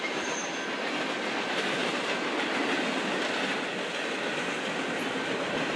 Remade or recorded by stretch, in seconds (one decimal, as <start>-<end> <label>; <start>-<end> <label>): 0.0-5.8 recorded